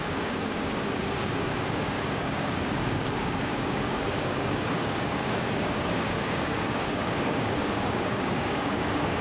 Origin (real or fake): fake